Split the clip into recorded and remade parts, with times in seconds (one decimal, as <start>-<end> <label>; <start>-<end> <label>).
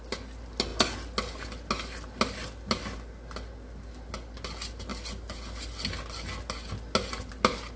0.0-7.8 recorded